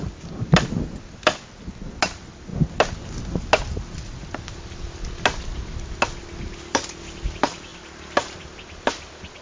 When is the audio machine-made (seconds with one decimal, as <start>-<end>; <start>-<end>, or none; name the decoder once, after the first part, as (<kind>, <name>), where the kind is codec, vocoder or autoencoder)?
none